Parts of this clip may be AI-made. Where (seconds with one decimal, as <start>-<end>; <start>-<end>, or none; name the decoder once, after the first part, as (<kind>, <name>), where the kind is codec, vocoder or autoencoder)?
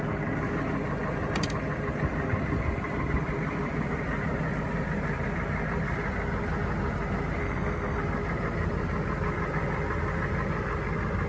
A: 7.4-8.0 (codec, SNAC)